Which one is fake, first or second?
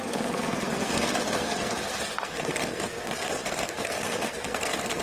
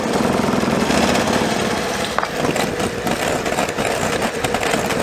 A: first